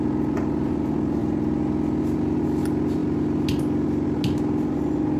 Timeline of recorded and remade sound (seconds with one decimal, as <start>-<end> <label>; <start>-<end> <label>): 0.0-5.2 recorded